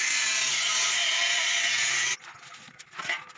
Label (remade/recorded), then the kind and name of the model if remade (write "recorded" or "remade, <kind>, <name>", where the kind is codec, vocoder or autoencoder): recorded